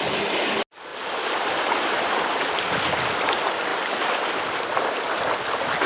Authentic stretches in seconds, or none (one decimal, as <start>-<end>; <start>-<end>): 0.0-0.9; 2.7-3.7; 4.6-5.9